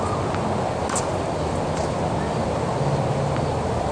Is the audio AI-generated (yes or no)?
no